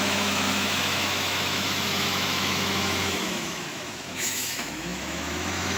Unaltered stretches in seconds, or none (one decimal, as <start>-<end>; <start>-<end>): none

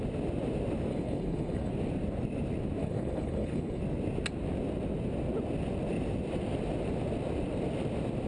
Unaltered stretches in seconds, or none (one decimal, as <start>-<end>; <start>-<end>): 0.0-0.9; 1.7-2.8; 3.8-8.3

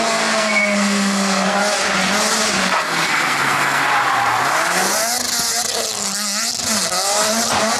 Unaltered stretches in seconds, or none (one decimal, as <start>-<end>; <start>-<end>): 1.6-2.8; 3.8-7.8

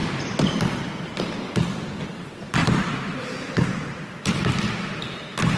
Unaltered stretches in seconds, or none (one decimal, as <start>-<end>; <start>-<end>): 0.6-2.6; 3.3-5.6

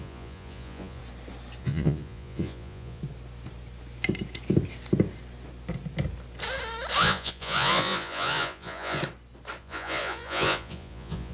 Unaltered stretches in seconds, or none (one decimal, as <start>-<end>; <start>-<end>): 1.0-1.6; 3.0-7.0; 9.0-9.6

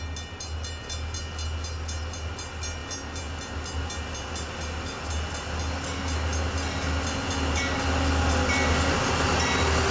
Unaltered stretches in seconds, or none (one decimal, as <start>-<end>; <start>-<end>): 0.0-9.9

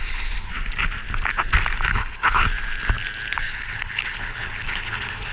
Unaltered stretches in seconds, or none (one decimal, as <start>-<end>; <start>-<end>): 0.5-1.9; 2.4-3.5

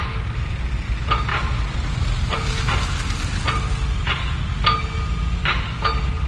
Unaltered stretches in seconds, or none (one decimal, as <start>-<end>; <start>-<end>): 0.0-1.3; 2.6-6.3